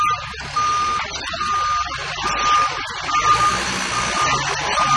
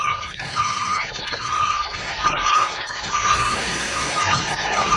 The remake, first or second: second